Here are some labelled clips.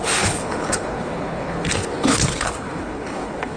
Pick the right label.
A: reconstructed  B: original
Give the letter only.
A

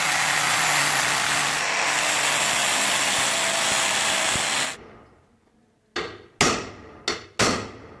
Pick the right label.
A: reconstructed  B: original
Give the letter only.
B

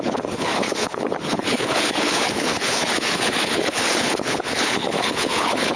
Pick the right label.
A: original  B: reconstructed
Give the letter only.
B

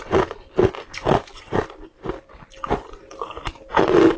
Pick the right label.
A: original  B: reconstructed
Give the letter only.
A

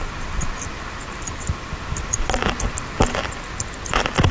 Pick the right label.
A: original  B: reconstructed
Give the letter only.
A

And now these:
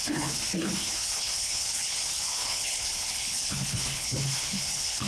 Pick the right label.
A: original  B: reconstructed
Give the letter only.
B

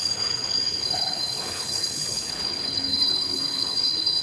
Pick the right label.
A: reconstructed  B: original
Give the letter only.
A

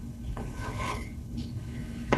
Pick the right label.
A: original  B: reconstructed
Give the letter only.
B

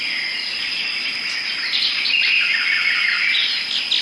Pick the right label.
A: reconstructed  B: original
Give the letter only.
B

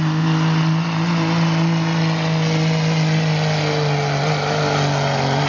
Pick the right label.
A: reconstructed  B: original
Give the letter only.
B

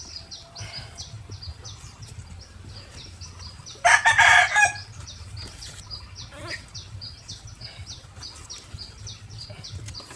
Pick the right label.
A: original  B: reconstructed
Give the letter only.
A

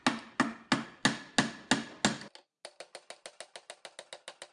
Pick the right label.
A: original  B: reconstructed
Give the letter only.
A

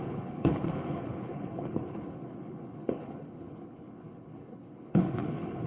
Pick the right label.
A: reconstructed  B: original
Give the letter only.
A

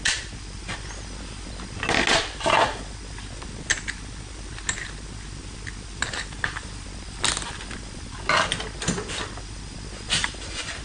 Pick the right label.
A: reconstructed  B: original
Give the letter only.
B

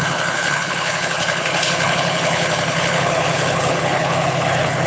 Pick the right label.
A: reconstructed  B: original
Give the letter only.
A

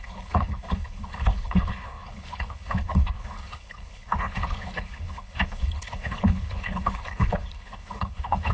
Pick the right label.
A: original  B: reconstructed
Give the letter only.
B